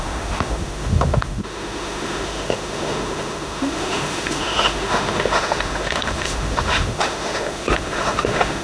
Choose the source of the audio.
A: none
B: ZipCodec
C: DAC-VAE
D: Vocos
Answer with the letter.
C